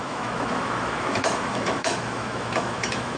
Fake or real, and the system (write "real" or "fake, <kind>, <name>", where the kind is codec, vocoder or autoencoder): fake, autoencoder, DAC-VAE